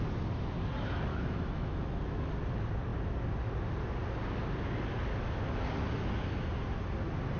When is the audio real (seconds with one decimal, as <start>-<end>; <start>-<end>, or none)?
0.0-1.1; 2.3-7.4